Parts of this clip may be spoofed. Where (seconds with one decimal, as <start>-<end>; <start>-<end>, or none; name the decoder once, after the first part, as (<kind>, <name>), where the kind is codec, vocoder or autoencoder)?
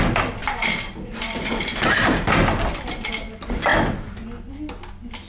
0.4-2.3 (vocoder, BigVGAN v2)